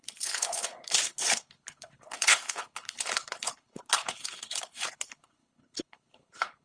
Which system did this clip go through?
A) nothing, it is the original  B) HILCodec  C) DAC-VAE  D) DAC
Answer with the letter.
B